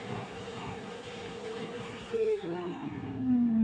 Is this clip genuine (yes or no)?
no